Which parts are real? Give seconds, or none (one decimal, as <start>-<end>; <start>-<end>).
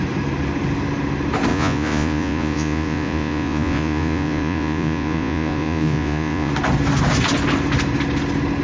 0.0-1.5; 6.5-8.6